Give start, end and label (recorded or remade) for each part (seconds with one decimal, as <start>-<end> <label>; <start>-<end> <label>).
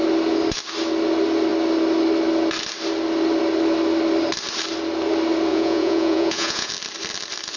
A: 0.0-5.5 recorded; 5.5-6.7 remade; 6.7-7.6 recorded